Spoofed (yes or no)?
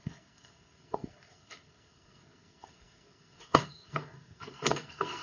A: yes